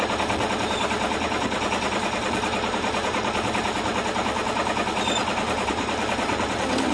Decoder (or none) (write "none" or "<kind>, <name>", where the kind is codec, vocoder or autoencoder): none